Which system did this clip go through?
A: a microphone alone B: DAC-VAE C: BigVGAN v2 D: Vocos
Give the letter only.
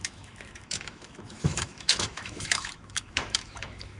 B